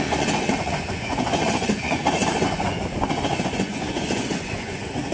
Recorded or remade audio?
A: remade